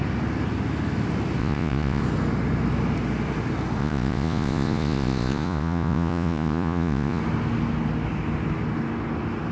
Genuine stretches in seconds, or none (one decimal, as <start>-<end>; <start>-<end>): 0.0-1.4; 2.0-3.8; 7.2-9.5